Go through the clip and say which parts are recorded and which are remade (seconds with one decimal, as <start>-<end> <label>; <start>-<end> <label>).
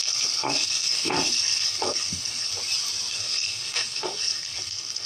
0.0-2.5 remade; 2.5-3.1 recorded; 3.1-5.1 remade